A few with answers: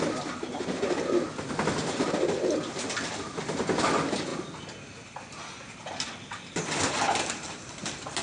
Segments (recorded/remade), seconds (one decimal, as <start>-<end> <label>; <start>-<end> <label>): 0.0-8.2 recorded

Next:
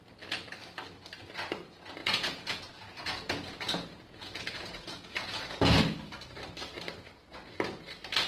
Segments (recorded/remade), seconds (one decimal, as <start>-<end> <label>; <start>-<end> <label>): 0.0-2.0 recorded; 2.0-5.8 remade; 5.8-8.3 recorded

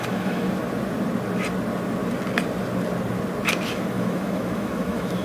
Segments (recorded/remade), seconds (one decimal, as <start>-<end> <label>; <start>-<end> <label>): 0.0-0.6 remade; 0.6-3.7 recorded; 3.7-5.2 remade

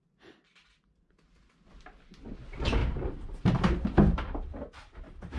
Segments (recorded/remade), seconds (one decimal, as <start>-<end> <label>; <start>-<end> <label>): 0.0-2.8 recorded; 2.8-5.4 remade